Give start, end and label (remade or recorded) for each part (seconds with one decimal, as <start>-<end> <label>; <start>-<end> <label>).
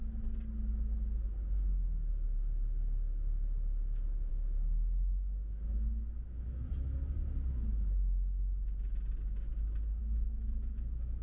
0.0-4.3 recorded; 4.3-6.7 remade; 6.7-10.0 recorded; 10.0-11.2 remade